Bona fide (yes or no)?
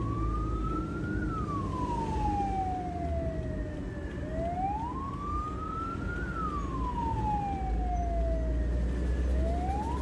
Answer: yes